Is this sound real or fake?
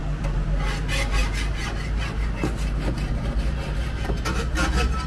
real